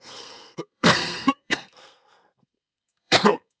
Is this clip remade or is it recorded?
remade